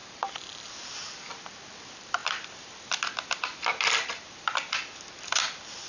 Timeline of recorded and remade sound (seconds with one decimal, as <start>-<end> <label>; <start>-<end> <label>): 0.0-0.7 remade; 0.7-2.2 recorded; 2.2-5.9 remade